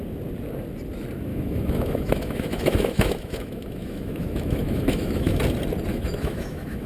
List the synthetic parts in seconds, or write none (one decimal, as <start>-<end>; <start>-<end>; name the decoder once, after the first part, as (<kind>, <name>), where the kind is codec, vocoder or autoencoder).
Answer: 1.3-5.4 (autoencoder, DAC-VAE); 5.9-6.9